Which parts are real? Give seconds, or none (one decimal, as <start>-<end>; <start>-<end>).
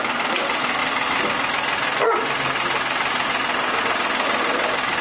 0.0-5.0